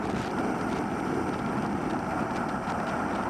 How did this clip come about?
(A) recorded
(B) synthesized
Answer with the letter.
A